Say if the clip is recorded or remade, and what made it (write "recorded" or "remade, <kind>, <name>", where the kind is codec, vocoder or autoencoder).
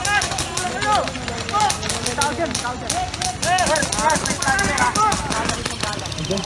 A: recorded